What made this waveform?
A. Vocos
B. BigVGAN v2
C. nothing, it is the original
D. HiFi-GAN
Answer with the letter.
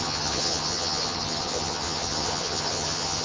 D